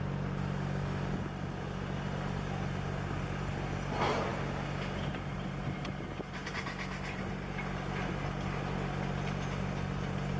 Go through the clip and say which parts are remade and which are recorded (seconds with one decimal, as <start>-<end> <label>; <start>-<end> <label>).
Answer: 0.0-10.4 recorded